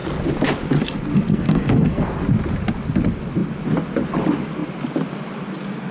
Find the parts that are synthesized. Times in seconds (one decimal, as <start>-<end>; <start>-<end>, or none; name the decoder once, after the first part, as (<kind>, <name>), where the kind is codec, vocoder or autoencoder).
1.3-2.1 (codec, SNAC)